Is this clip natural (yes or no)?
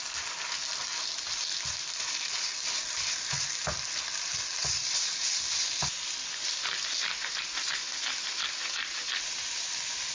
yes